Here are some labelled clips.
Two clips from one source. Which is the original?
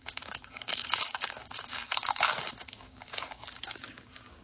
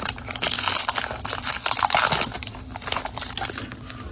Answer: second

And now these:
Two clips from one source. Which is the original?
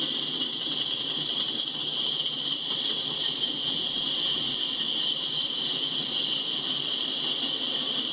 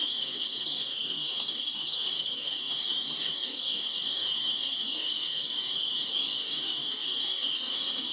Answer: first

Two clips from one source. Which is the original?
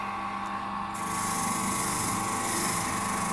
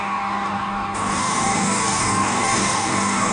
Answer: first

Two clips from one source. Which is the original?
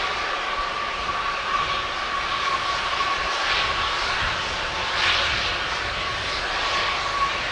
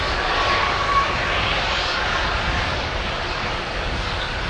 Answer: first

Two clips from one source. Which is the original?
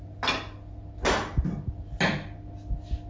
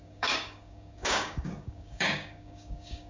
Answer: first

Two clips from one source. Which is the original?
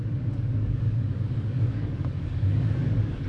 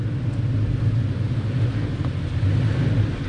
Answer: second